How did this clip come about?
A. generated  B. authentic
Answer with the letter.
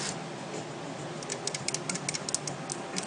B